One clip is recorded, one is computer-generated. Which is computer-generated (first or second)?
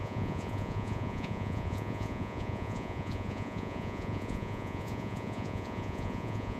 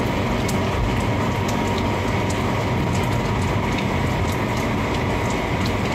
first